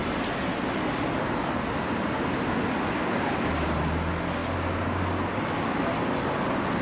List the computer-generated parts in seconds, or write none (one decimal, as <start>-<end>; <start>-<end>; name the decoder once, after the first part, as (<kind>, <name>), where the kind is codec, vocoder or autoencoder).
none